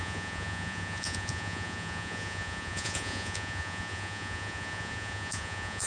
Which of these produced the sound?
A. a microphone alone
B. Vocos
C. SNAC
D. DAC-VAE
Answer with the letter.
B